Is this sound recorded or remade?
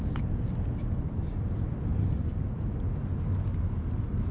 recorded